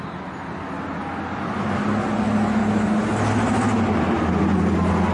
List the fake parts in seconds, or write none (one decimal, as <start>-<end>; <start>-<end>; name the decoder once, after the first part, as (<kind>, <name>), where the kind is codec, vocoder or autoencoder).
none